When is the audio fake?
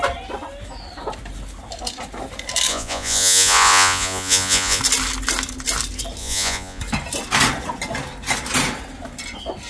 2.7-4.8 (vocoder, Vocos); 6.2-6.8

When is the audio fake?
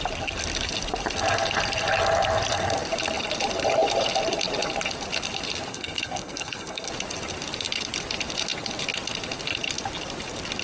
5.7-6.9 (codec, SNAC)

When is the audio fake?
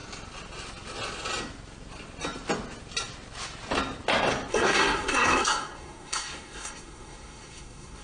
4.5-8.0 (codec, SNAC)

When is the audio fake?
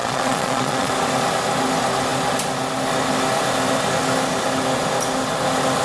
0.0-0.9 (vocoder, Vocos)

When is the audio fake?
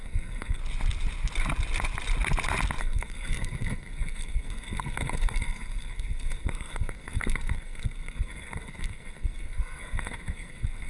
0.0-0.6 (codec, SNAC); 2.8-10.9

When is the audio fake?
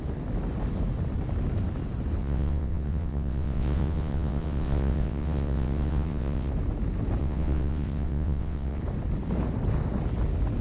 2.2-6.5 (vocoder, WaveNeXt); 7.2-8.8